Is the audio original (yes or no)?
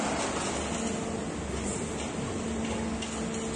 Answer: yes